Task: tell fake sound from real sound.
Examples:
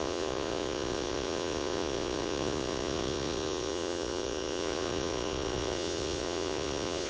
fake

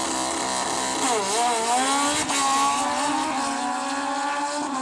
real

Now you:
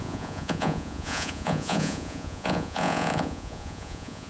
fake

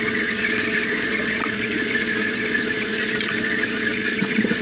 fake